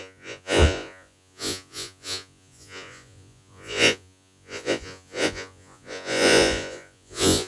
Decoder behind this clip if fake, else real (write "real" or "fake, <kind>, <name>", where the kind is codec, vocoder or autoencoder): fake, vocoder, Vocos